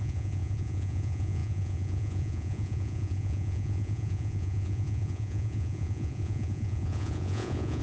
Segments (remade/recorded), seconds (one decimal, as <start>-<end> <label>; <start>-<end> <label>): 0.0-7.8 remade